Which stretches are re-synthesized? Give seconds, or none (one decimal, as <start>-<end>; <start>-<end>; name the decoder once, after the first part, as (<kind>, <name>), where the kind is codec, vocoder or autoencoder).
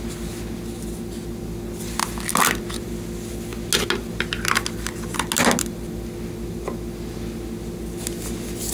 none